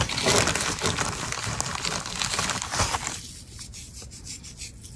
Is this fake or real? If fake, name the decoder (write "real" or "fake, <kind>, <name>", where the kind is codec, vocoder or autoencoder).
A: real